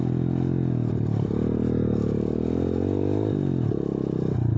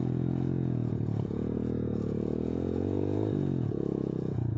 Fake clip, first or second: second